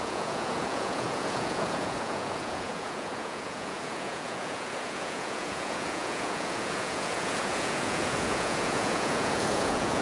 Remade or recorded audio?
remade